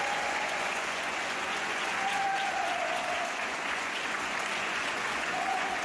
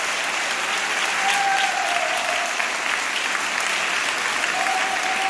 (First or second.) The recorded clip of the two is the second